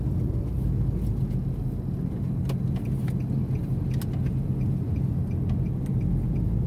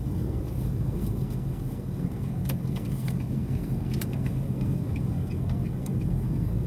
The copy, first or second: second